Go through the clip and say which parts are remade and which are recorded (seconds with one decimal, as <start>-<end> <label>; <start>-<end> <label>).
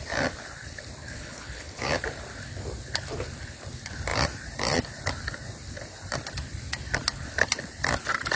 0.0-1.0 recorded; 1.0-1.8 remade; 1.8-8.4 recorded